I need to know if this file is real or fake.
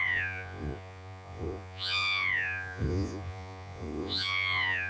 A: fake